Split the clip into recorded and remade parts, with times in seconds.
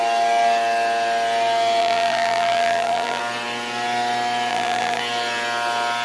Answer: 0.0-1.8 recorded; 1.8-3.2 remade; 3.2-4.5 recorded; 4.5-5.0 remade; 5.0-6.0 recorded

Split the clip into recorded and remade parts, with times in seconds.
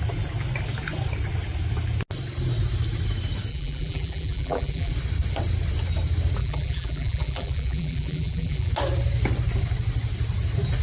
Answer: 0.0-3.5 recorded; 3.5-4.9 remade; 4.9-6.4 recorded; 6.4-8.7 remade; 8.7-10.8 recorded